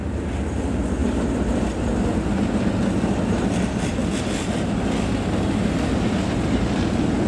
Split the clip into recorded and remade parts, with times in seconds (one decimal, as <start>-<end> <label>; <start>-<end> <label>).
0.0-7.3 recorded